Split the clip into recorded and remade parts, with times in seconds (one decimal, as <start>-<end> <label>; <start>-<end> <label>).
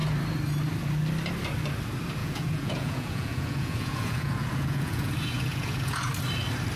0.0-2.2 recorded; 2.2-6.1 remade; 6.1-6.8 recorded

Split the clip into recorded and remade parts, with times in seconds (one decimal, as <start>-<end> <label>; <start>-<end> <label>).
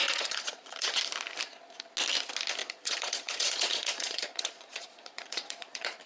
0.0-1.0 remade; 1.0-2.6 recorded; 2.6-6.1 remade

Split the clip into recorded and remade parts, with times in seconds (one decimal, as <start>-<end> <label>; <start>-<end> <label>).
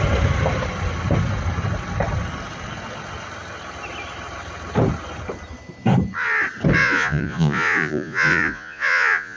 0.0-6.8 recorded; 6.8-9.4 remade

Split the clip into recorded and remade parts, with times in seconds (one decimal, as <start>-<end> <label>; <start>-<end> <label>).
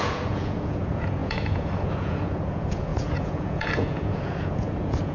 0.0-5.1 remade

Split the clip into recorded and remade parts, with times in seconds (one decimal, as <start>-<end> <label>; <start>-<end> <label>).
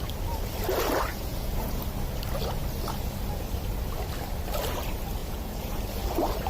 0.0-1.1 recorded; 1.1-1.8 remade; 1.8-5.2 recorded; 5.2-5.8 remade; 5.8-6.5 recorded